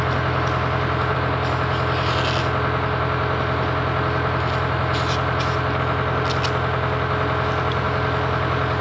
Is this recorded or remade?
recorded